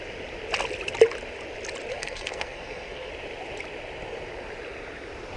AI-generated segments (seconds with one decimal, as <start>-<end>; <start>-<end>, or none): 1.9-3.1